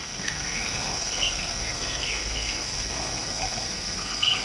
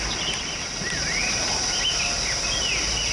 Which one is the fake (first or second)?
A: first